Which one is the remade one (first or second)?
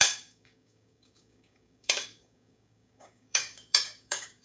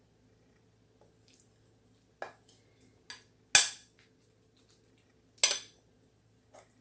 first